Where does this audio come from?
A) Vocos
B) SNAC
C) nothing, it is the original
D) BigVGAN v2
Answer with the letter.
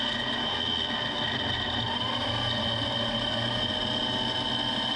C